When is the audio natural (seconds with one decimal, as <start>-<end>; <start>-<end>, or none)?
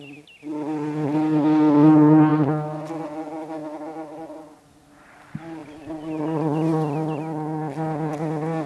0.0-8.7